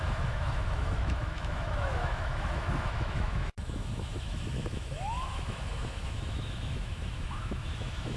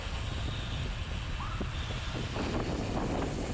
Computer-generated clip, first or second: first